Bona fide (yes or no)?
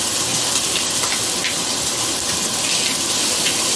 yes